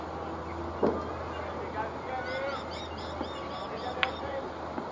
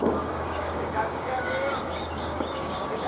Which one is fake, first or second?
second